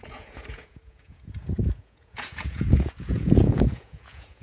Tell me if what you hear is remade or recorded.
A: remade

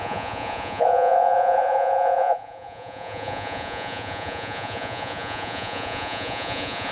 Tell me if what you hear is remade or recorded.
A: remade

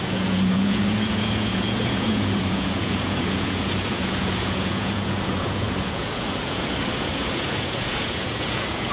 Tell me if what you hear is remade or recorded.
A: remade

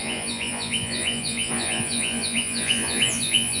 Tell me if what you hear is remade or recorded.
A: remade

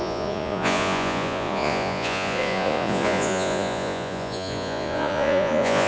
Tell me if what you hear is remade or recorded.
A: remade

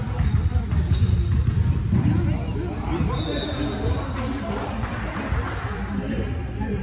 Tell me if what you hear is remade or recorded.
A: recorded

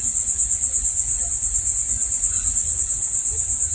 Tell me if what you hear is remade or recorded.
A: recorded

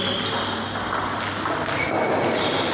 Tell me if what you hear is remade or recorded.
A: recorded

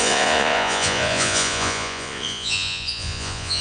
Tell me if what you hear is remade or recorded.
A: remade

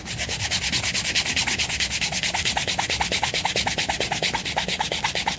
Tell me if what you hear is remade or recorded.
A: recorded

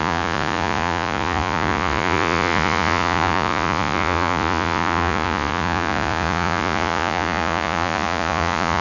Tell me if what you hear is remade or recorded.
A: remade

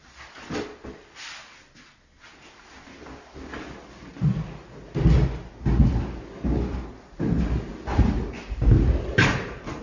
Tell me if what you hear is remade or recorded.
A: recorded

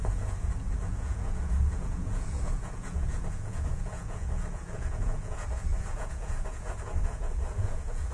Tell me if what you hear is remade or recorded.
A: remade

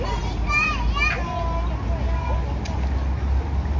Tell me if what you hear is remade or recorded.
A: recorded